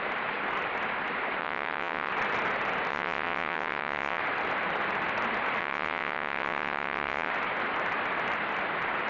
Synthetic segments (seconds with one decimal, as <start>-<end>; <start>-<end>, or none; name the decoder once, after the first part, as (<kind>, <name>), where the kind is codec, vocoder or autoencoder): 1.4-2.1 (vocoder, WaveNeXt); 2.9-4.2; 5.6-7.3